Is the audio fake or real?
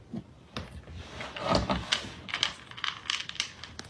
real